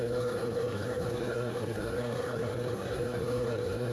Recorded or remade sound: remade